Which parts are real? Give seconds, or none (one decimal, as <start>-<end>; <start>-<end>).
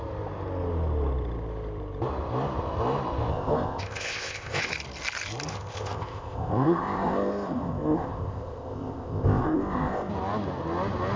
0.0-3.3; 4.7-5.5; 10.1-11.2